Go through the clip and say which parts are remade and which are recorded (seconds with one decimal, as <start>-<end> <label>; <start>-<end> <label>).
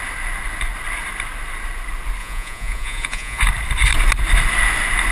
0.0-2.2 recorded; 2.2-3.4 remade; 3.4-5.1 recorded